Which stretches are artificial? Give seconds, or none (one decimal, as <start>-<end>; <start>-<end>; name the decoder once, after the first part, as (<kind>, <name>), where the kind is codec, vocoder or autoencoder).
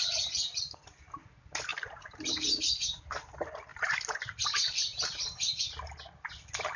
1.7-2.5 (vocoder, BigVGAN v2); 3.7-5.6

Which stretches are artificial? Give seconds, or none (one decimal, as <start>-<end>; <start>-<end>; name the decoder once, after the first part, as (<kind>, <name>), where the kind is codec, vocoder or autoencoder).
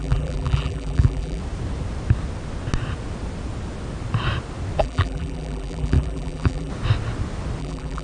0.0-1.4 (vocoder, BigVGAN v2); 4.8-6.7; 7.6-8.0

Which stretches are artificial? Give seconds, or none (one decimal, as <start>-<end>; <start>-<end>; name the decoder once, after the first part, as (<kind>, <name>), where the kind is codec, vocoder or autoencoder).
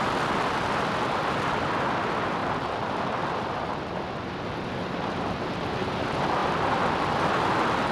none